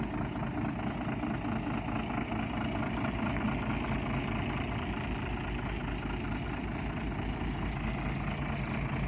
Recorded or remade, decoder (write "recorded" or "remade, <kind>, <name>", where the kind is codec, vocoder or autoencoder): recorded